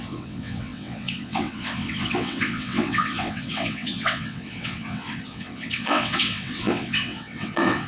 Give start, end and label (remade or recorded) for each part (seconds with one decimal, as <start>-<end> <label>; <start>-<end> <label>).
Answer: 0.0-7.9 remade